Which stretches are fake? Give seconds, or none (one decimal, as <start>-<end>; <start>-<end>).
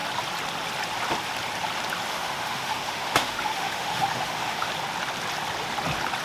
2.1-4.7